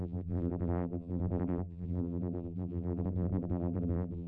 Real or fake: fake